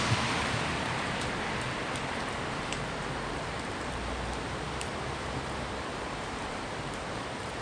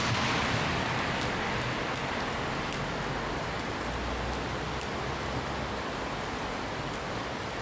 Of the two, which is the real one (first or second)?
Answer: second